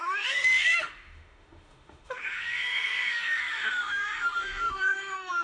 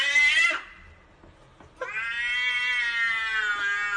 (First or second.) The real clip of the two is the second